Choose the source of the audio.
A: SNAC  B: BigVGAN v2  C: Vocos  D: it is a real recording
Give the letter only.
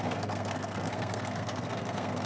A